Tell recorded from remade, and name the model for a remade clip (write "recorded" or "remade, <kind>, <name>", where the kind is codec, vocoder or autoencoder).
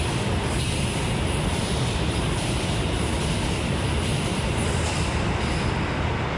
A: remade, vocoder, BigVGAN v2